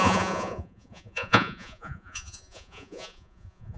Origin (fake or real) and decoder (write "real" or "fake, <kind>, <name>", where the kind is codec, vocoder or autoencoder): fake, vocoder, Vocos